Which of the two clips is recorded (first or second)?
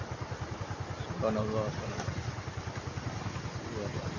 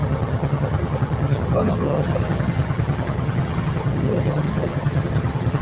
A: first